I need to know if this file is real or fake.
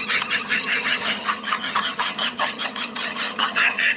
fake